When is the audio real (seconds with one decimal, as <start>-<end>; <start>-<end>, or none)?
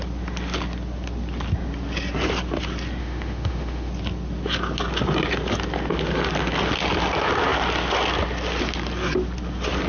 0.0-3.0; 3.9-9.9